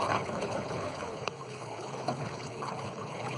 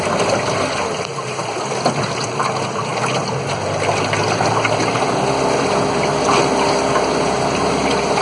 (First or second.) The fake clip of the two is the first